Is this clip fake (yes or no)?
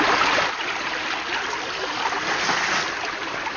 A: no